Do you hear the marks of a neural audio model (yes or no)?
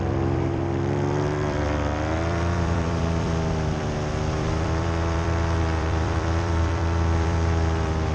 yes